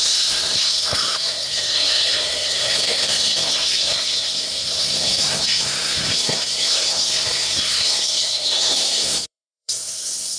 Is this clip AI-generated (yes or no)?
yes